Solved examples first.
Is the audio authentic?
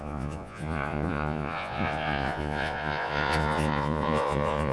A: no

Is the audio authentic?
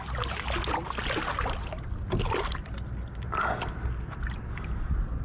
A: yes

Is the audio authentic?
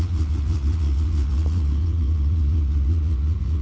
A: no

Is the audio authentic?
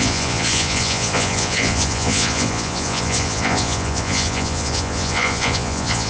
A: no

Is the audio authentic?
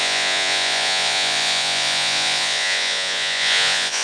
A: no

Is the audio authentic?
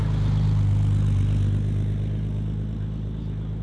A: yes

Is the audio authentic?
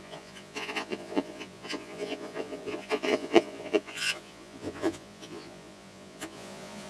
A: no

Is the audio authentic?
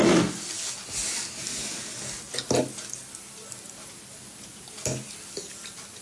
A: yes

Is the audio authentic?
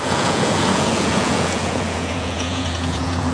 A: no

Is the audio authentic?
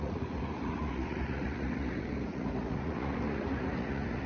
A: no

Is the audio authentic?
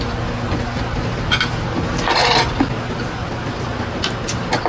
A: yes